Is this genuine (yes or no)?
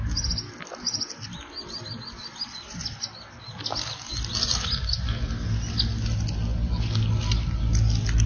yes